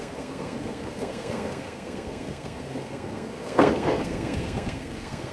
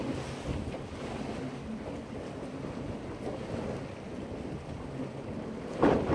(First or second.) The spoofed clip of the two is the first